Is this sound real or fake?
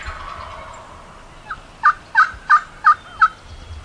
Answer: real